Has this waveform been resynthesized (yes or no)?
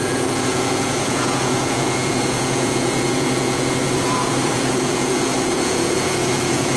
yes